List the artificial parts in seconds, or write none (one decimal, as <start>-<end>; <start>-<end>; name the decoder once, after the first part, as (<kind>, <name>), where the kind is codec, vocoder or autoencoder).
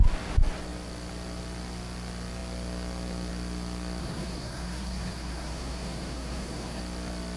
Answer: 4.0-6.8 (codec, SNAC)